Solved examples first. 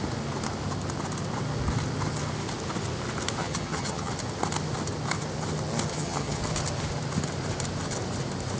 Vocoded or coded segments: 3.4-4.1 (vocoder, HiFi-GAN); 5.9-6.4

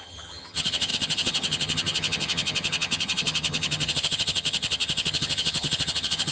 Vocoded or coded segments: 0.0-6.3 (vocoder, HiFi-GAN)

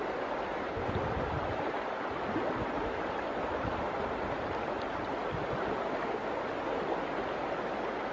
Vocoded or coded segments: none